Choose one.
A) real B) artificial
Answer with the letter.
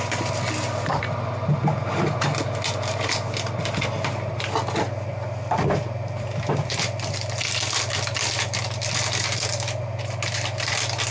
A